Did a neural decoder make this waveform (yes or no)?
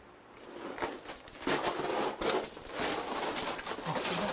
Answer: no